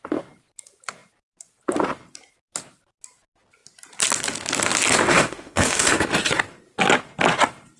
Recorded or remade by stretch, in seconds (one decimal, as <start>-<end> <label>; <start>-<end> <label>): 0.0-5.1 recorded; 5.1-6.0 remade; 6.0-7.8 recorded